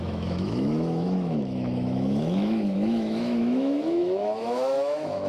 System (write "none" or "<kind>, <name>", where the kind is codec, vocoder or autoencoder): autoencoder, DAC-VAE